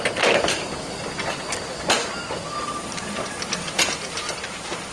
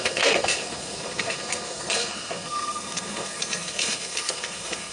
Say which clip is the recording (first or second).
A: first